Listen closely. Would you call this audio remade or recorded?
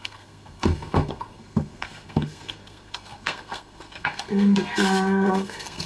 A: remade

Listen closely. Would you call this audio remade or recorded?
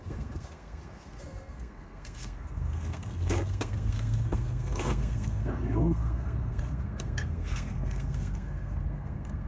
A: remade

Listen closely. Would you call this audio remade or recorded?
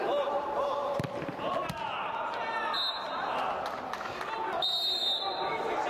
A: recorded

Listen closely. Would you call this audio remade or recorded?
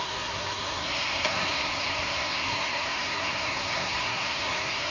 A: remade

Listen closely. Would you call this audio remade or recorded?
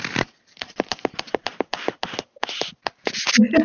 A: recorded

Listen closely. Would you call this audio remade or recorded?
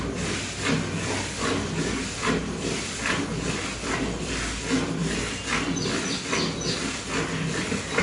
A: recorded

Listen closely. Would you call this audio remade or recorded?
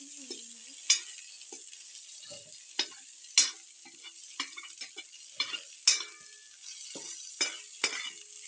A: recorded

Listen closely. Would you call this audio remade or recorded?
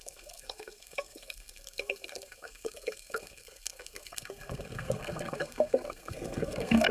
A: remade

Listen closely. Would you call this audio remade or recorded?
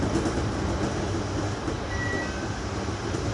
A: recorded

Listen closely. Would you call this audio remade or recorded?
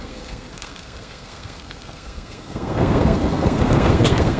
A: remade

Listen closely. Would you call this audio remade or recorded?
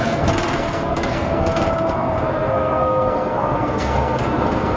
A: remade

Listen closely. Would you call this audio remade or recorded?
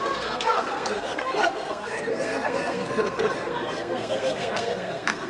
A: remade